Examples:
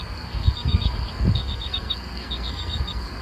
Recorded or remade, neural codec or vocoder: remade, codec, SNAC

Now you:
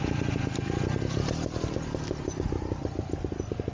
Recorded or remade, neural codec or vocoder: recorded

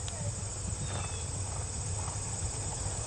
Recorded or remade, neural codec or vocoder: recorded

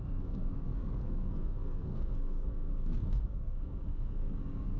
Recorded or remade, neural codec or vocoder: remade, codec, SNAC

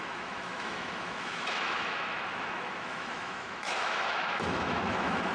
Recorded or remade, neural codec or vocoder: remade, autoencoder, DAC-VAE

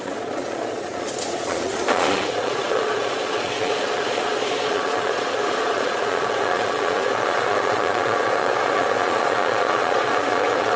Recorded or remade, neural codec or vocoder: remade, vocoder, Vocos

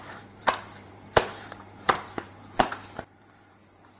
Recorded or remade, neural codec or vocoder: remade, vocoder, BigVGAN v2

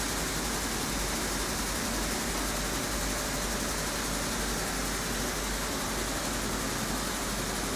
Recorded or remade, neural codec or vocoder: recorded